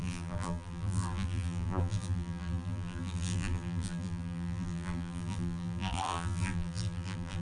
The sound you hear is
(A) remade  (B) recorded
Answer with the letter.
A